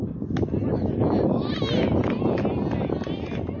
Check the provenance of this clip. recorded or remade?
recorded